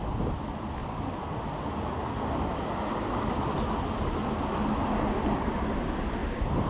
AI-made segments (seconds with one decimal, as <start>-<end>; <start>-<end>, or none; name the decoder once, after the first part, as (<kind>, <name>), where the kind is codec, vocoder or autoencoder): none